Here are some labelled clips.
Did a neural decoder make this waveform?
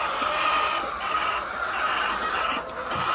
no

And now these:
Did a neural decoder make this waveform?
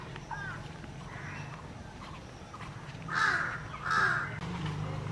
no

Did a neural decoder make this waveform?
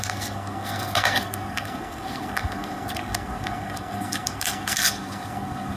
yes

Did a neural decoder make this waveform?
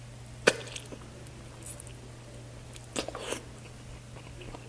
no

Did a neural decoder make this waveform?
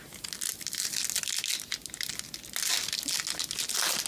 no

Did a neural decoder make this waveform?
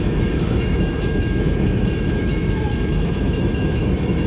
yes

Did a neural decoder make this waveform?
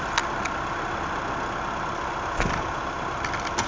no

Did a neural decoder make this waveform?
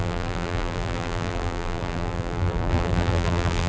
yes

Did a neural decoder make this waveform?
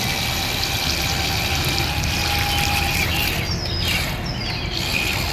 no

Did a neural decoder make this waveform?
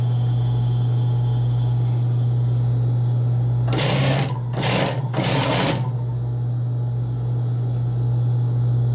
no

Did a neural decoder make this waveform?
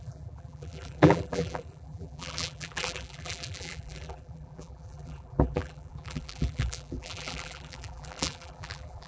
yes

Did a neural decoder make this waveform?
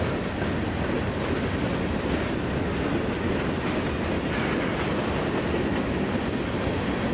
no